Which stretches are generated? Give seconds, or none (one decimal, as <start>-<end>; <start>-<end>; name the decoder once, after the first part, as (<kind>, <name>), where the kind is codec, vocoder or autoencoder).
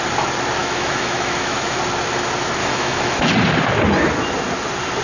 0.6-1.8 (autoencoder, DAC-VAE); 2.6-3.3